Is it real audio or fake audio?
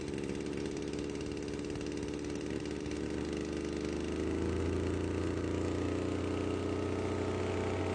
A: real